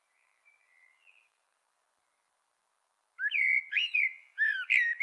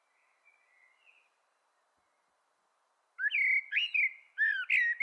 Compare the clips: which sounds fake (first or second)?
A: first